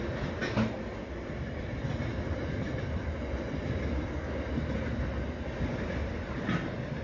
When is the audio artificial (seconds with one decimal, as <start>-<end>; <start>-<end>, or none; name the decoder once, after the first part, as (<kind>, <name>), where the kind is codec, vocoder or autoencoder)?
none